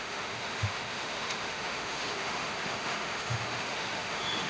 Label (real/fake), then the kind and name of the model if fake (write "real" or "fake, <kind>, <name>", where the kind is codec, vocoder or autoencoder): fake, autoencoder, DAC-VAE